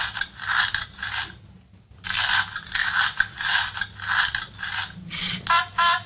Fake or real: real